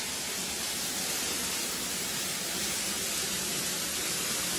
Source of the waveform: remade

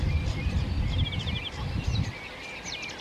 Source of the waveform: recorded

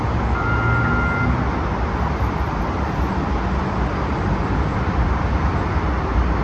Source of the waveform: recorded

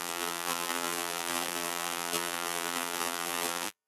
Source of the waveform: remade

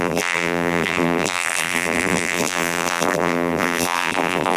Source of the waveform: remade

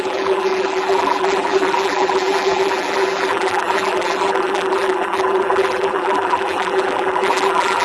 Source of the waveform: remade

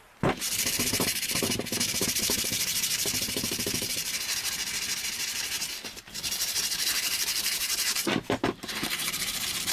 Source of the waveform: remade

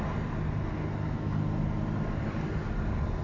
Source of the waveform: recorded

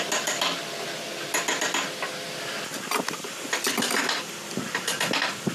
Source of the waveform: recorded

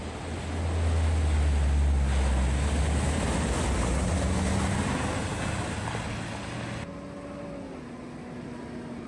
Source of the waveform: recorded